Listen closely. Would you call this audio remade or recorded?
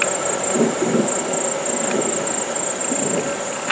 recorded